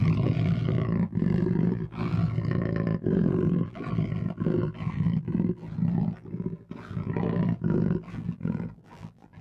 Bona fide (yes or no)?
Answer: no